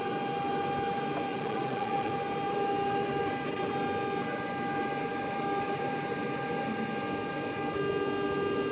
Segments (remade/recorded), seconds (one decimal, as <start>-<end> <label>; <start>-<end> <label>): 0.0-1.3 recorded; 1.3-2.1 remade; 2.1-8.7 recorded